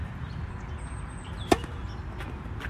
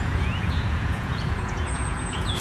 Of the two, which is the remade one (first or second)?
second